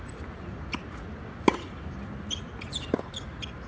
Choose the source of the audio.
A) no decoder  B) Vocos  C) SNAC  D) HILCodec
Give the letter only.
A